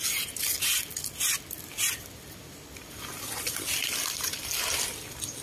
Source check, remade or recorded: recorded